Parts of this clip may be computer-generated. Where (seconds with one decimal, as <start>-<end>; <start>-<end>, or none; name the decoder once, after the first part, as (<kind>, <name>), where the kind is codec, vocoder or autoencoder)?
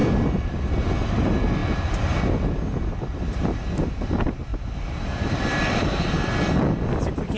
4.5-5.6 (vocoder, BigVGAN v2)